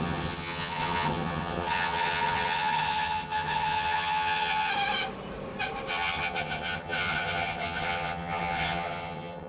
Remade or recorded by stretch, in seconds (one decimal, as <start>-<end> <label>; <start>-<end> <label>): 0.0-4.7 remade; 4.7-5.9 recorded; 5.9-9.5 remade